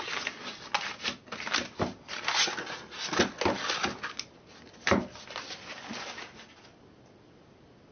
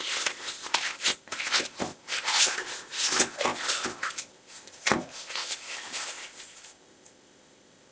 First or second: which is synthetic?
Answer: second